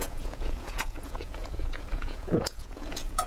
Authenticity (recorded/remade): remade